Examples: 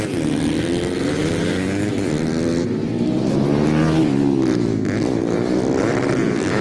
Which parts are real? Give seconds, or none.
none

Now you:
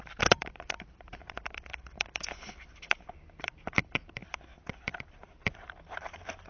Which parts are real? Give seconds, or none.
4.2-4.8

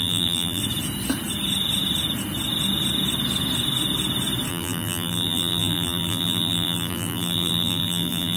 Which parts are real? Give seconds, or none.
0.6-4.5

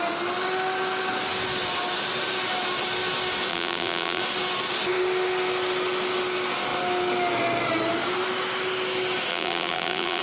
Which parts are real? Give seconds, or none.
0.0-3.5; 4.2-9.3